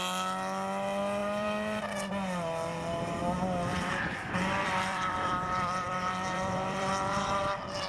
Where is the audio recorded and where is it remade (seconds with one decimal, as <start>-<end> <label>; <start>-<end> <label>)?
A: 0.0-1.2 recorded; 1.2-1.8 remade; 1.8-3.7 recorded; 3.7-6.9 remade; 6.9-7.9 recorded